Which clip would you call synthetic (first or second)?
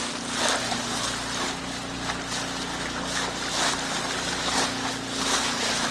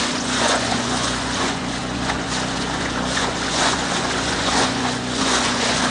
second